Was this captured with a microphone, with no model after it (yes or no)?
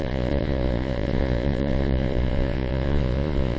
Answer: no